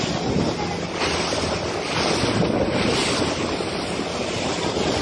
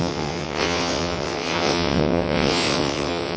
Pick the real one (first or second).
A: first